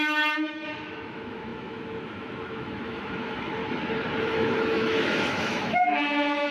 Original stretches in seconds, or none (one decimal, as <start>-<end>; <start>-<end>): 3.6-4.2